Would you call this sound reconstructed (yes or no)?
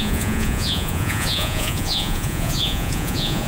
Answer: yes